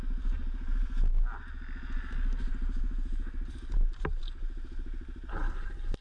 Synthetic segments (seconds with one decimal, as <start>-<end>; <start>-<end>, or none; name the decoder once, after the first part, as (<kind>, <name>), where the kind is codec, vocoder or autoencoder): 5.3-6.0 (codec, HILCodec)